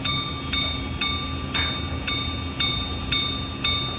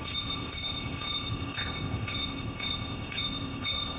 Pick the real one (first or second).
first